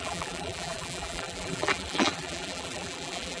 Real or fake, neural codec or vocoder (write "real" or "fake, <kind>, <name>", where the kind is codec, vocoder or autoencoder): fake, vocoder, BigVGAN v2